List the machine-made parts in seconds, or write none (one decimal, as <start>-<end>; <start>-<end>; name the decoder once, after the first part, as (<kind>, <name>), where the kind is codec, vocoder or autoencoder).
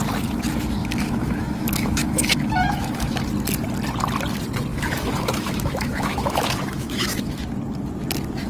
0.8-3.2 (autoencoder, DAC-VAE); 4.7-7.4